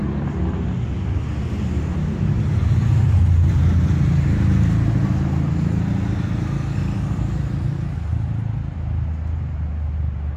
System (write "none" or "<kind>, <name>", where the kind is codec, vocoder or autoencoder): none